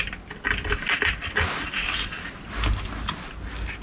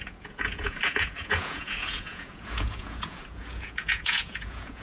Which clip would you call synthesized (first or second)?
second